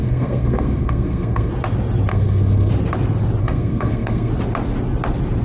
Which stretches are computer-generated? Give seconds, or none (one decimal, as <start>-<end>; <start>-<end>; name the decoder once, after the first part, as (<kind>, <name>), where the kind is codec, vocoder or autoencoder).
0.0-1.5 (codec, SNAC); 2.1-2.7; 3.4-4.3